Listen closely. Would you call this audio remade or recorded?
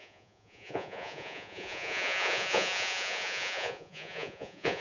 remade